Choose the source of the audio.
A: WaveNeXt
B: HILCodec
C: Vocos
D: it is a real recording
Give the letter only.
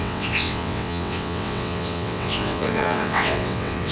A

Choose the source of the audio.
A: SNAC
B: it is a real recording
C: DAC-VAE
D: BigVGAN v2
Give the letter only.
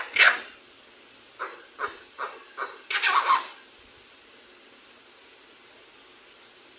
B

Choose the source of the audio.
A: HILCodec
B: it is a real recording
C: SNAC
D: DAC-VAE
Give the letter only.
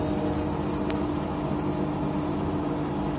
B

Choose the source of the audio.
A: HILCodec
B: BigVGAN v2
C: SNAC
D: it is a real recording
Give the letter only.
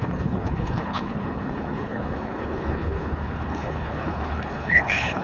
A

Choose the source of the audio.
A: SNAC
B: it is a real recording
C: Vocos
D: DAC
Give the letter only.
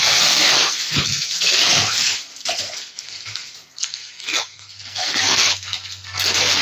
A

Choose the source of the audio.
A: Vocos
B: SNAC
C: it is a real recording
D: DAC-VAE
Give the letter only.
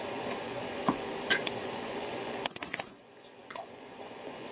A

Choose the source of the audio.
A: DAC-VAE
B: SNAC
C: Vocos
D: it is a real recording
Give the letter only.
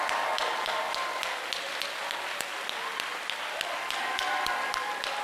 D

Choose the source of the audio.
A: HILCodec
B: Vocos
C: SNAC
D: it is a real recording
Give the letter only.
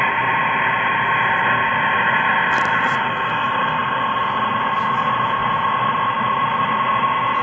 D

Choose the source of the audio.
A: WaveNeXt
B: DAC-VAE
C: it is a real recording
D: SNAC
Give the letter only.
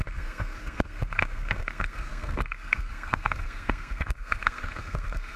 D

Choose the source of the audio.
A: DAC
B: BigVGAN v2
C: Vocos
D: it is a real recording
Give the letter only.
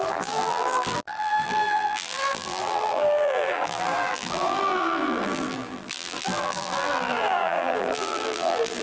B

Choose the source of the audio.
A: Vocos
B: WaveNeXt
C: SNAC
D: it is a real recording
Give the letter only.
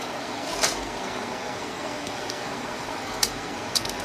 C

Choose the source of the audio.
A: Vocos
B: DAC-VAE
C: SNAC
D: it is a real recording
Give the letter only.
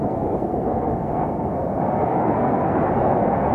C